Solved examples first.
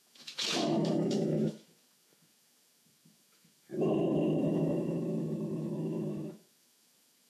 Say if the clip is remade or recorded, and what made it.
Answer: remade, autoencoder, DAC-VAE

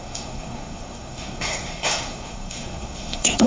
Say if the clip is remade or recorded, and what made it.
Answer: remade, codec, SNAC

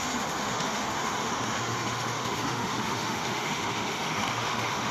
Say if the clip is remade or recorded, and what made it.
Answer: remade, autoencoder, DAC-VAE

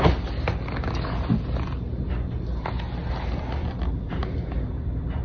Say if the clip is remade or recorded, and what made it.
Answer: recorded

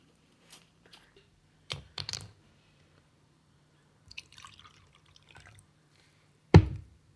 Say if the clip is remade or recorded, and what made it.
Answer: remade, vocoder, BigVGAN v2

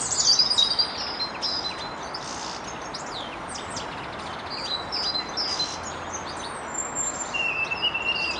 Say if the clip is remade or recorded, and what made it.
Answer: recorded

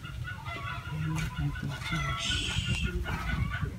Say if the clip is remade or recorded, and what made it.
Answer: recorded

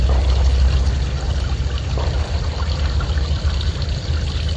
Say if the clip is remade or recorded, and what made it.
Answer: recorded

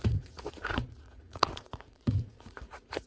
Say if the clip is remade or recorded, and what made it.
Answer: remade, vocoder, Vocos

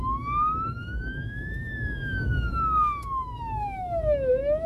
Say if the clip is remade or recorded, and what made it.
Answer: remade, autoencoder, DAC-VAE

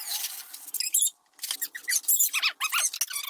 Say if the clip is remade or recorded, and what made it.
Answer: recorded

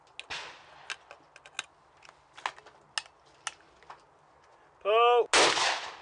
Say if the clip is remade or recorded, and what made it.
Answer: recorded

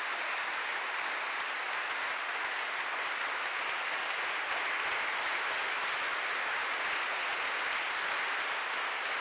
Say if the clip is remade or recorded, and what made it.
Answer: recorded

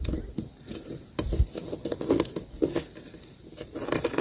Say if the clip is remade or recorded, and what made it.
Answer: recorded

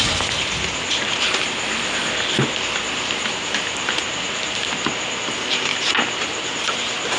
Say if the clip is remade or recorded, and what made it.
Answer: recorded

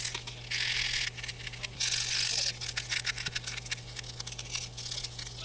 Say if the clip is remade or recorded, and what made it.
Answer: recorded